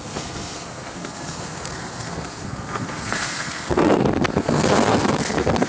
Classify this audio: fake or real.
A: fake